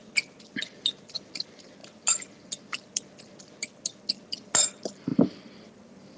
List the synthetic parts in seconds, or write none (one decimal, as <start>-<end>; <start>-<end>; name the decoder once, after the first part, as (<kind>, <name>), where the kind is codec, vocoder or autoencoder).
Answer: none